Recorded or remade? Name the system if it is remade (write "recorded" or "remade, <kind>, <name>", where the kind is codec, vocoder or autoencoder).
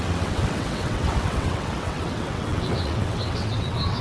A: remade, vocoder, WaveNeXt